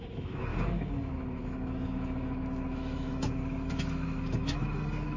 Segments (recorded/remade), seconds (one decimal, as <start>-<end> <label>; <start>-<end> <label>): 0.0-5.2 remade